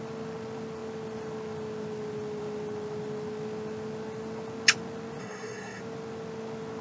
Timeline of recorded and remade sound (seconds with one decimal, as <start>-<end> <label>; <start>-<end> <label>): 0.0-5.2 recorded; 5.2-5.8 remade; 5.8-6.8 recorded